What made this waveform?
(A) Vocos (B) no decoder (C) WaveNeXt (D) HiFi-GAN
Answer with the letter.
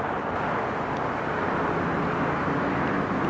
B